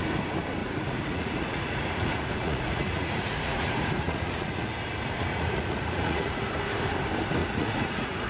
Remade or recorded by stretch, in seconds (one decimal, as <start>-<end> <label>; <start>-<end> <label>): 0.0-0.6 recorded; 0.6-4.7 remade; 4.7-5.3 recorded; 5.3-6.5 remade; 6.5-7.4 recorded; 7.4-8.3 remade